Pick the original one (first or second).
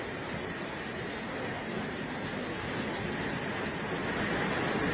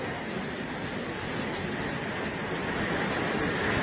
first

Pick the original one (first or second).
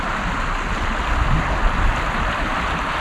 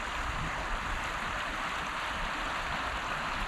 first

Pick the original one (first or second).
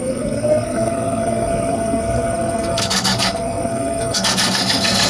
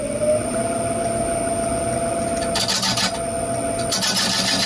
second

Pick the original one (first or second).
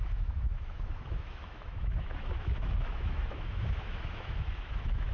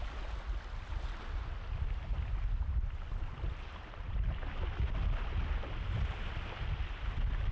second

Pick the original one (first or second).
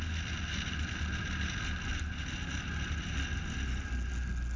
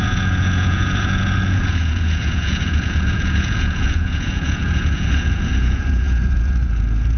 first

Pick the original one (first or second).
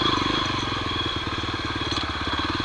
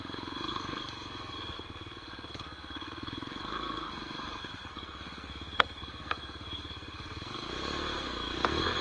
first